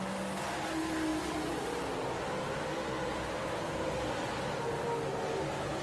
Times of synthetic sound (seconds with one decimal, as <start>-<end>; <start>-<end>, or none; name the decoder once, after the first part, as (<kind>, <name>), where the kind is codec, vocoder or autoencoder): 1.1-3.6 (vocoder, BigVGAN v2)